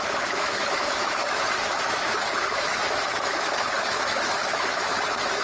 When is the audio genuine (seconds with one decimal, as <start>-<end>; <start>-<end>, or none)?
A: none

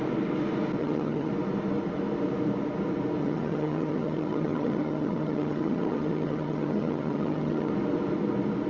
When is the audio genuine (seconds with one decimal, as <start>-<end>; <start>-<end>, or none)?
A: 0.0-0.8; 1.3-3.2; 7.7-8.7

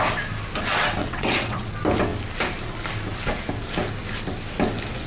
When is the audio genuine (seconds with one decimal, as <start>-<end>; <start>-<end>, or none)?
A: 0.0-1.0; 1.7-5.1

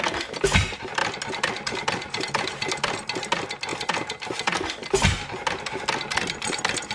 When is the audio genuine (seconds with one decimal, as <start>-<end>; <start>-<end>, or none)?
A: 0.0-6.9

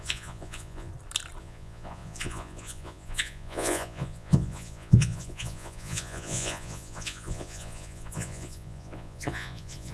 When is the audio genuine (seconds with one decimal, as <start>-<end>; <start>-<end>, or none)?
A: 0.9-1.4

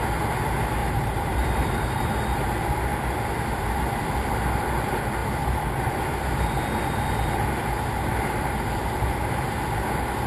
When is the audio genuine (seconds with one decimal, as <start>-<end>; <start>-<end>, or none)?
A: 0.0-0.8; 2.2-10.3